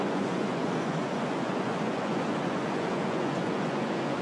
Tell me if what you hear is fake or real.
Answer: fake